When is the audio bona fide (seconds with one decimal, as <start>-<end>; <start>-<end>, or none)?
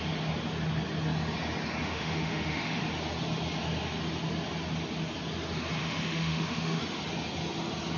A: 0.0-1.8; 2.8-5.8; 6.8-8.0